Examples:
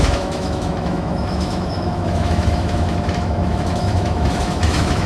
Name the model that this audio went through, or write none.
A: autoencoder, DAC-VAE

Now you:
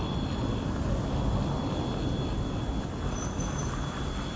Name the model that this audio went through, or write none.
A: none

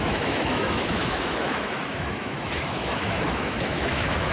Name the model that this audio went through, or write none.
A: autoencoder, DAC-VAE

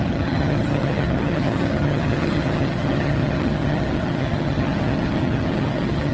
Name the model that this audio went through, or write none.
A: vocoder, HiFi-GAN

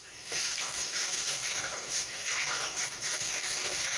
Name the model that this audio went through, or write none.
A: codec, DAC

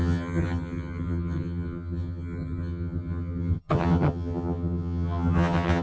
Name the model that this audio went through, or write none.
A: vocoder, HiFi-GAN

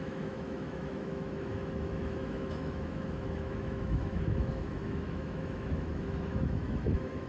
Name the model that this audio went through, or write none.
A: autoencoder, DAC-VAE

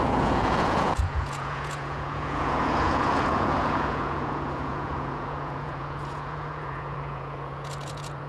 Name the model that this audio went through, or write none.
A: vocoder, Vocos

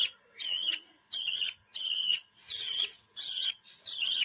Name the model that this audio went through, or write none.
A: vocoder, Vocos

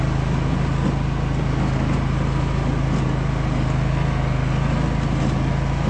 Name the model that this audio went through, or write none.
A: none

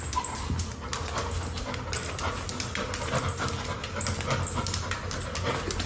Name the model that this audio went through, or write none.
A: none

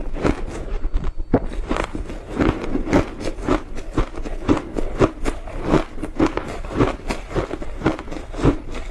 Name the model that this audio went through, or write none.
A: none